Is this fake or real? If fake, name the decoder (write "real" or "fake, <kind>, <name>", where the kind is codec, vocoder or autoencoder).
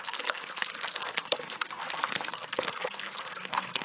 fake, codec, SNAC